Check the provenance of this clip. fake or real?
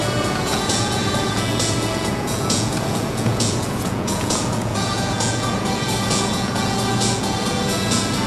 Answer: fake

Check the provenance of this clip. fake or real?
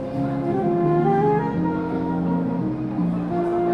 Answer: real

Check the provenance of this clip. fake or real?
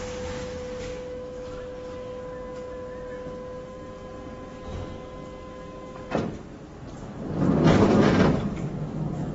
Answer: real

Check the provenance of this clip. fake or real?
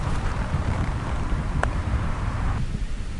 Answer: fake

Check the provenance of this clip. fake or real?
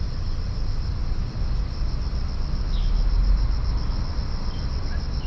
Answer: real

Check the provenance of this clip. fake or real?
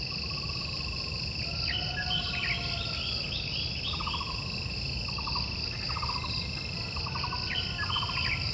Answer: real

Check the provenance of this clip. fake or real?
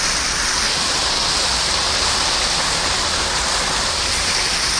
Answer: real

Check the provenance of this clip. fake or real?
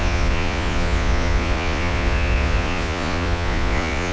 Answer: fake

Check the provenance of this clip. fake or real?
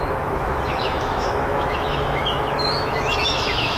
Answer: fake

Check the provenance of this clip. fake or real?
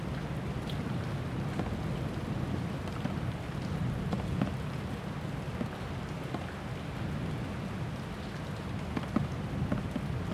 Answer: real